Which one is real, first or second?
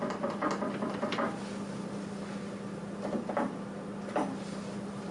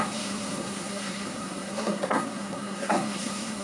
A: first